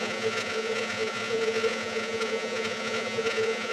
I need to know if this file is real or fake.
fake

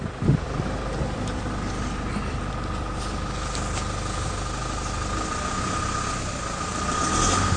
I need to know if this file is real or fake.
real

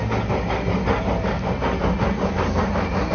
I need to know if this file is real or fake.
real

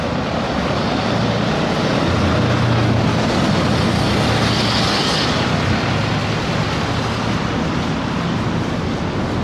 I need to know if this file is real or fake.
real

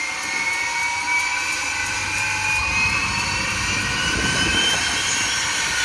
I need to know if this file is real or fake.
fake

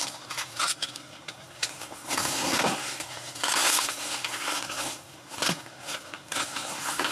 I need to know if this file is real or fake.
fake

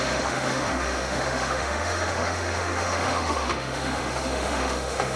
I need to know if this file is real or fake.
fake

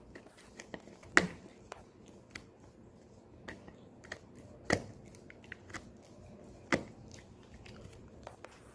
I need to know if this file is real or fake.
real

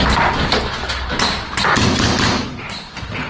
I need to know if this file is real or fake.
real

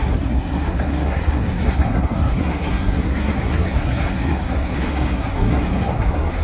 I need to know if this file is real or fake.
fake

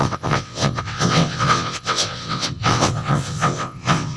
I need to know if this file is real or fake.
fake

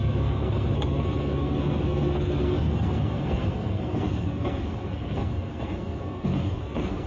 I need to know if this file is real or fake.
fake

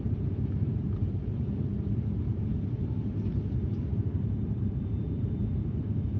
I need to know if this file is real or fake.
fake